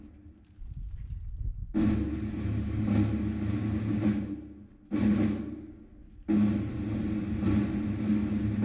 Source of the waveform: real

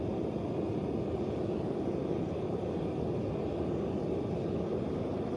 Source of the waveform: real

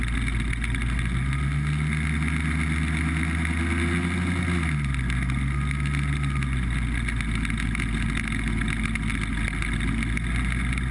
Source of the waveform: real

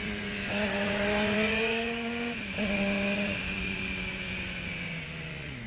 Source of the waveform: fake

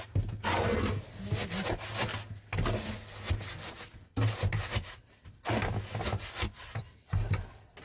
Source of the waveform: real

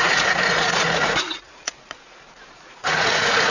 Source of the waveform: fake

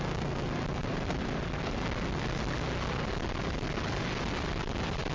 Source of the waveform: real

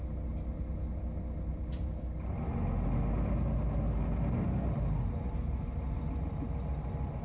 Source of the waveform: real